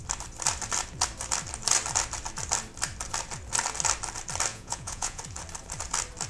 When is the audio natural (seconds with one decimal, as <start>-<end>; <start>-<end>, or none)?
0.0-4.5; 5.2-6.3